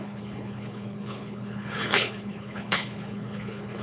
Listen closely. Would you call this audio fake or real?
fake